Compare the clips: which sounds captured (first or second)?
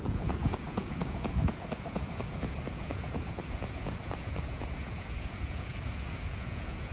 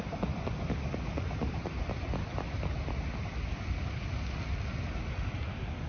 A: second